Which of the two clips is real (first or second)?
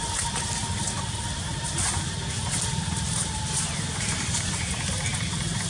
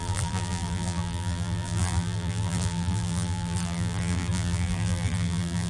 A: first